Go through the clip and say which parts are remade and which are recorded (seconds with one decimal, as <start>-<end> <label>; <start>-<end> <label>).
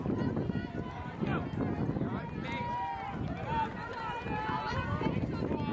0.0-5.7 recorded